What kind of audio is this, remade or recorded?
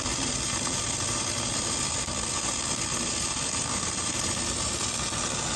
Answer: recorded